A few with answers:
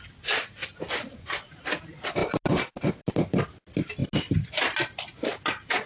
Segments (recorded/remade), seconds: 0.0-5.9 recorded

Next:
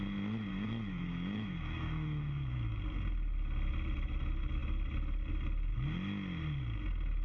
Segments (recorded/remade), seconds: 0.0-0.5 recorded; 0.5-2.8 remade; 2.8-7.2 recorded

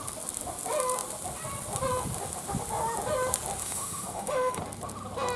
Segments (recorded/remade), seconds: 0.0-3.6 recorded; 3.6-4.6 remade; 4.6-5.4 recorded

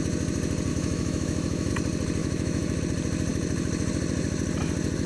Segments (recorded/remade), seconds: 0.0-0.7 recorded; 0.7-1.7 remade; 1.7-2.2 recorded; 2.2-2.8 remade; 2.8-5.1 recorded

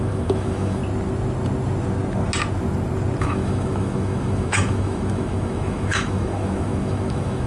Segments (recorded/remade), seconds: 0.0-0.8 remade; 0.8-3.2 recorded; 3.2-7.5 remade

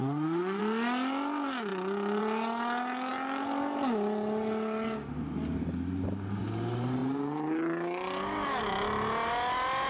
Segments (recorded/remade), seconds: 0.0-0.6 remade; 0.6-9.9 recorded

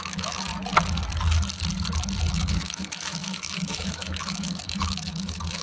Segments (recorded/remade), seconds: 0.0-0.5 remade; 0.5-2.3 recorded; 2.3-5.6 remade

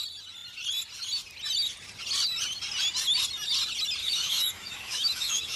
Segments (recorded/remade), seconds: 0.0-4.0 recorded; 4.0-5.6 remade